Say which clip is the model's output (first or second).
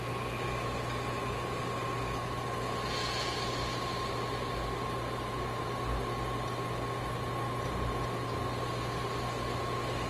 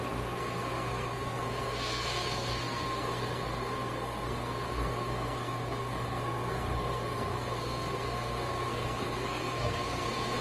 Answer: second